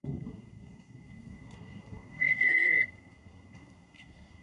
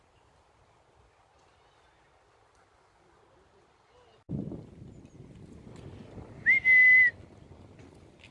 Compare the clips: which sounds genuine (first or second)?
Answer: second